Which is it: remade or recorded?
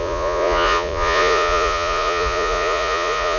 remade